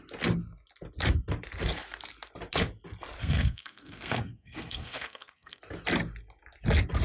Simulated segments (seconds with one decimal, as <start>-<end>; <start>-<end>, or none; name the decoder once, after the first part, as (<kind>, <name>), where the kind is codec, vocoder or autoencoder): 3.2-5.6 (codec, SNAC)